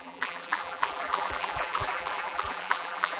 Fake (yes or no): yes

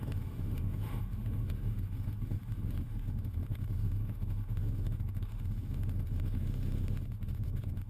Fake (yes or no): yes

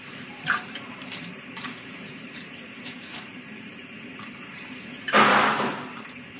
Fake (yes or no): yes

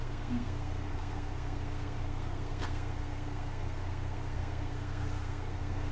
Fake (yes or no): yes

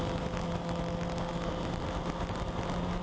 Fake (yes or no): no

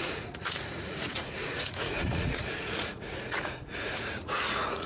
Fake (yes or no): yes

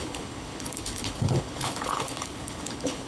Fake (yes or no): yes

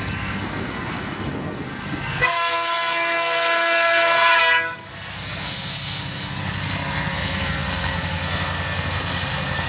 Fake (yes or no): yes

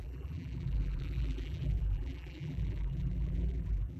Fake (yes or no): yes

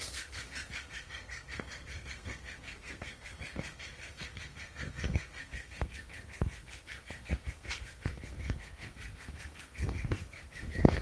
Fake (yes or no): yes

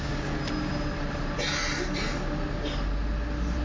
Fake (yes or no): no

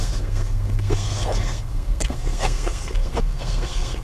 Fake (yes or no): yes